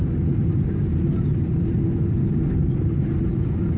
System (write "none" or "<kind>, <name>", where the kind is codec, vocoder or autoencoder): none